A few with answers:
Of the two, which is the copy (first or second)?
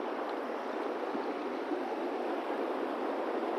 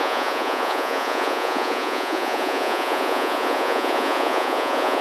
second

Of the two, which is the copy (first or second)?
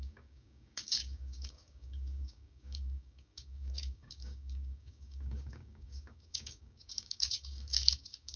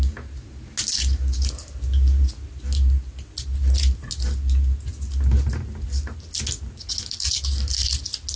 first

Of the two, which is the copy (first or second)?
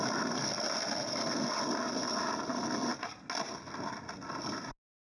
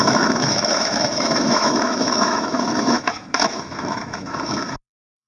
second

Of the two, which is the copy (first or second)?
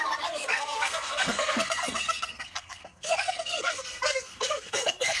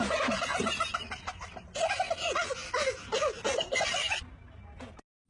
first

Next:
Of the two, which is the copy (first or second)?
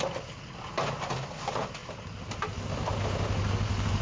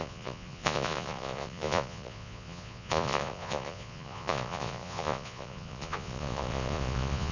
second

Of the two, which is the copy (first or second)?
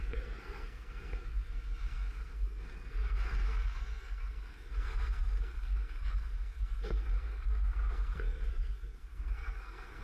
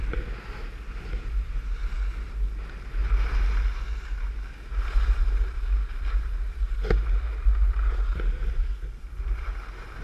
first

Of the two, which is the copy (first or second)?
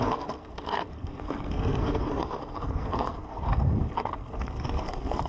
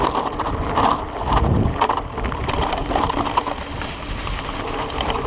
first